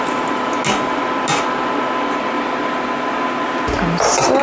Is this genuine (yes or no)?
yes